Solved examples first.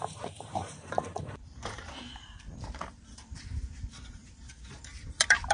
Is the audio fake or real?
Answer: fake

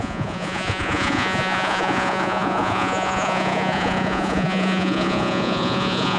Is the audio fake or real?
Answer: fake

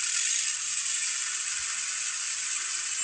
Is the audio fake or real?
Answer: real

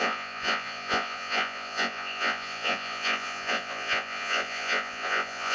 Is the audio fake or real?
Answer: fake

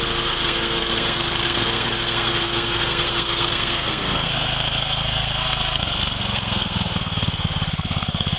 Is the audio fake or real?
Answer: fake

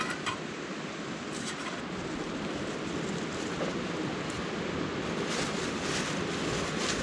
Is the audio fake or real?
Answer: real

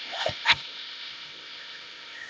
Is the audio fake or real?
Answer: fake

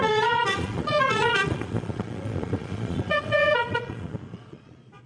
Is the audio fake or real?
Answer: fake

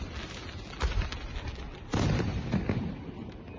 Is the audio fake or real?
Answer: real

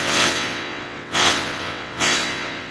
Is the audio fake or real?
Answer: fake